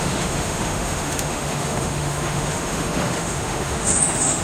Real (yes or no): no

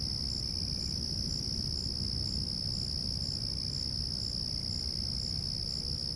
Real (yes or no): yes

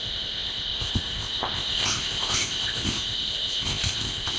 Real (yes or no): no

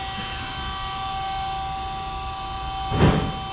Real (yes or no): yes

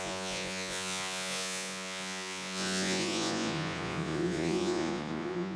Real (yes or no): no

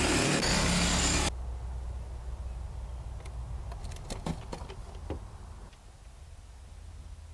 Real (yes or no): yes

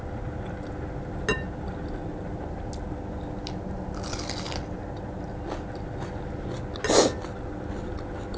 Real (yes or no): yes